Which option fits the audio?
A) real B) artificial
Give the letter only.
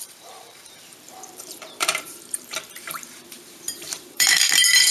B